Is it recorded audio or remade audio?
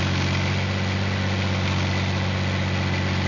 recorded